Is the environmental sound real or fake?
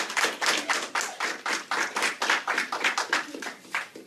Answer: real